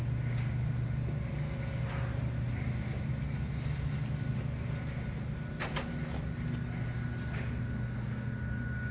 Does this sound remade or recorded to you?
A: recorded